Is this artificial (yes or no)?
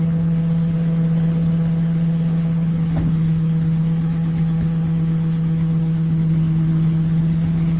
yes